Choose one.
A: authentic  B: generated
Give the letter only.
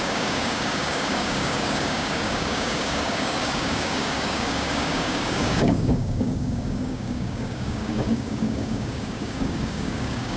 B